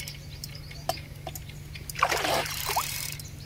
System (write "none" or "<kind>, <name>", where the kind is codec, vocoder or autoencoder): vocoder, BigVGAN v2